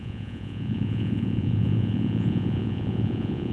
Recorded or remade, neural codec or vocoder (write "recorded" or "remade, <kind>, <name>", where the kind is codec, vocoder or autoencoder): remade, vocoder, Vocos